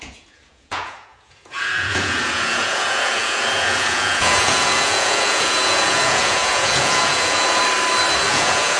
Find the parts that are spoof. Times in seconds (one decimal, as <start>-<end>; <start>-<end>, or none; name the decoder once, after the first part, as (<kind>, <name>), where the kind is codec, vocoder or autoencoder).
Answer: 0.0-7.6 (vocoder, Vocos); 8.2-8.8